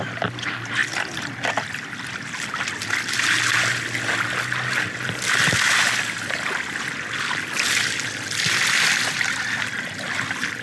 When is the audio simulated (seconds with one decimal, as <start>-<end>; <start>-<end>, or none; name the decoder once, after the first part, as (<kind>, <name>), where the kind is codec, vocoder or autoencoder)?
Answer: none